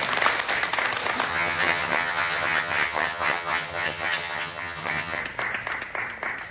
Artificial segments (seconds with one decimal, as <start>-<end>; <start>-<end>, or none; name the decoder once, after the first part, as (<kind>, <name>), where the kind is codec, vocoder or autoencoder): 1.3-5.2 (vocoder, HiFi-GAN)